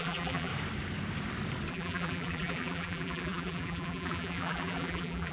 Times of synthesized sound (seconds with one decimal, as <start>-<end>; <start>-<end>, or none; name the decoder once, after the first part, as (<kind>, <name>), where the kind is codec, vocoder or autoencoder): 0.0-0.5 (vocoder, BigVGAN v2); 1.7-5.3